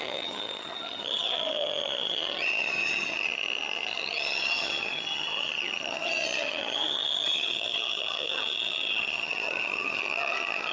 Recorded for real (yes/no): no